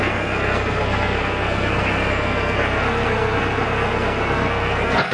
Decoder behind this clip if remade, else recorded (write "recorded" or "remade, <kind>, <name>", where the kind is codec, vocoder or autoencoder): remade, codec, SNAC